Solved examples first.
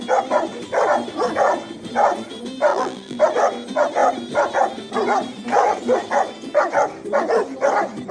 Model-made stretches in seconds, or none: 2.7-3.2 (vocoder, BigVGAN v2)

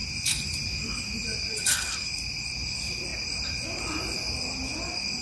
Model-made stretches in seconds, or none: 0.0-1.7 (vocoder, BigVGAN v2)

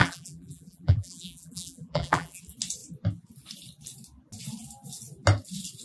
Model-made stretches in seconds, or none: 0.0-2.4 (vocoder, BigVGAN v2)